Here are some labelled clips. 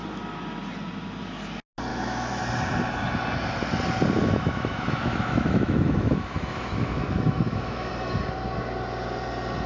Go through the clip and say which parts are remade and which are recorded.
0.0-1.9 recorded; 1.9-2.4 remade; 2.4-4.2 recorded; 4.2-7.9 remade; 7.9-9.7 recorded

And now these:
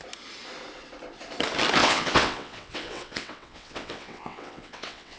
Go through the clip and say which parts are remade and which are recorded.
0.0-1.8 recorded; 1.8-5.2 remade

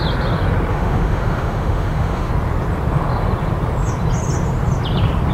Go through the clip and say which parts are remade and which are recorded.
0.0-0.7 recorded; 0.7-2.3 remade; 2.3-5.3 recorded

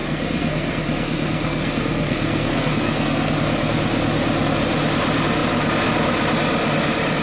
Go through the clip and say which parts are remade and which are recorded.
0.0-3.3 remade; 3.3-7.2 recorded

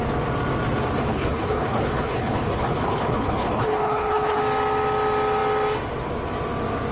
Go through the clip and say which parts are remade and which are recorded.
0.0-1.1 recorded; 1.1-4.4 remade; 4.4-6.9 recorded

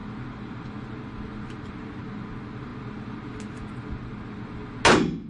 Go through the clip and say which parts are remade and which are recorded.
0.0-5.3 recorded